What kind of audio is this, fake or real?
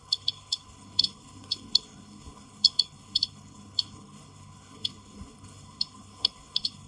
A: fake